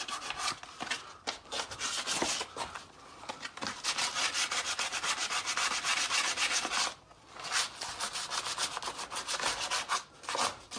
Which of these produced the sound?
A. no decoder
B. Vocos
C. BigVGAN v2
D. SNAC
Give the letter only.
A